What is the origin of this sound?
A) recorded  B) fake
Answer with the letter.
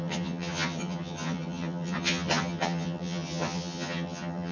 B